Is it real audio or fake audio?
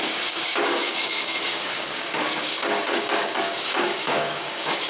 fake